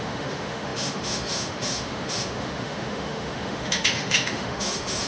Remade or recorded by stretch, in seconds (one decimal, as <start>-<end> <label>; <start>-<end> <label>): 0.0-5.1 remade